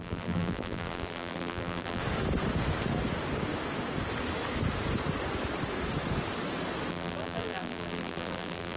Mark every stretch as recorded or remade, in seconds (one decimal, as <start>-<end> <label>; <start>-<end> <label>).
0.0-2.0 remade; 2.0-6.9 recorded; 6.9-8.8 remade

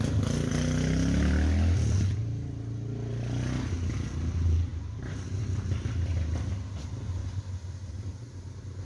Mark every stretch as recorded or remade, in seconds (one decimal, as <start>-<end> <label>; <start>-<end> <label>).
0.0-4.7 recorded; 4.7-5.4 remade; 5.4-8.8 recorded

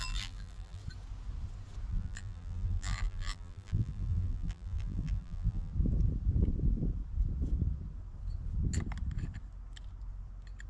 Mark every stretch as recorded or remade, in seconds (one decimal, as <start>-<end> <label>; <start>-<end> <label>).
0.0-0.8 remade; 0.8-1.9 recorded; 1.9-5.7 remade; 5.7-10.7 recorded

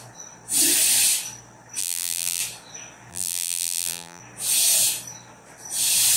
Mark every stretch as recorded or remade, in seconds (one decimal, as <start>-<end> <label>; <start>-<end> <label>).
0.0-1.8 recorded; 1.8-2.4 remade; 2.4-3.1 recorded; 3.1-4.2 remade; 4.2-6.2 recorded

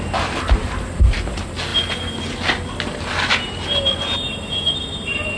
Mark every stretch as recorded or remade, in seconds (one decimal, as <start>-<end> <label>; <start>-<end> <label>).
0.0-5.4 recorded

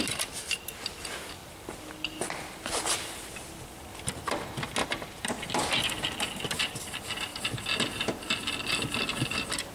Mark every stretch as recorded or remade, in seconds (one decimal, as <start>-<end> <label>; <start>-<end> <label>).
0.0-4.8 recorded; 4.8-5.3 remade; 5.3-9.7 recorded

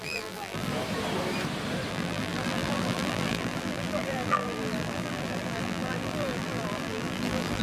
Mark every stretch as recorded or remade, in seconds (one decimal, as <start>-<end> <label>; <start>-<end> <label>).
0.0-0.7 remade; 0.7-1.9 recorded; 1.9-7.6 remade

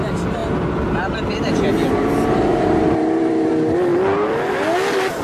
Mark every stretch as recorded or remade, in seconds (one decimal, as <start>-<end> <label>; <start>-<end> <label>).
0.0-2.5 recorded; 2.5-3.5 remade; 3.5-5.2 recorded